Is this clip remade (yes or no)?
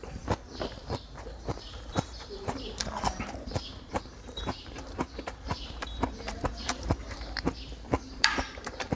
yes